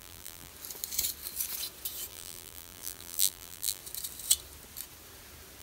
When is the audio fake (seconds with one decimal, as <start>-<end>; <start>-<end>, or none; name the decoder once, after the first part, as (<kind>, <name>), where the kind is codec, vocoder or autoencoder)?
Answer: 0.0-0.5 (vocoder, BigVGAN v2); 2.1-3.8